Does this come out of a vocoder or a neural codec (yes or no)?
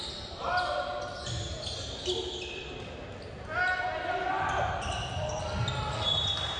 no